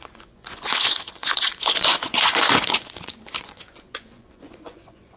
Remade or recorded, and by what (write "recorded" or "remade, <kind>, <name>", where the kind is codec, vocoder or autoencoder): remade, vocoder, Vocos